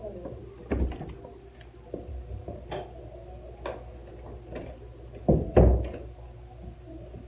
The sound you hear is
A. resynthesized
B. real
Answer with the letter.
B